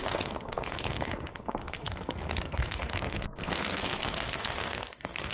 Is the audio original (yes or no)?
no